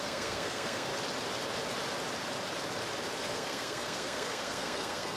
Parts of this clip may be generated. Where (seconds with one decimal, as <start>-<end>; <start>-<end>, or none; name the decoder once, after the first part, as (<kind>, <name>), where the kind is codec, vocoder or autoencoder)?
0.0-0.9 (codec, SNAC); 3.3-5.2